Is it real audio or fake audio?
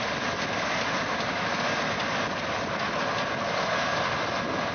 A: real